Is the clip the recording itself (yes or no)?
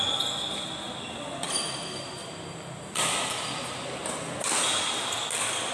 yes